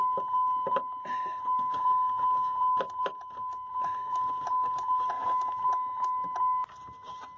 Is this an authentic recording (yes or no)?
yes